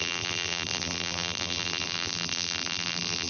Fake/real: fake